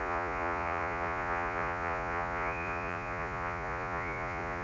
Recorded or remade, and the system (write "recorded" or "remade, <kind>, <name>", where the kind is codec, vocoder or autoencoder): remade, vocoder, Vocos